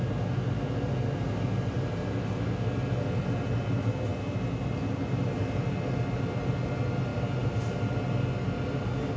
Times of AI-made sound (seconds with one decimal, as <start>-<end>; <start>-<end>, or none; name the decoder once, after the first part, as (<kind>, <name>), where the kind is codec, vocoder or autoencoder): none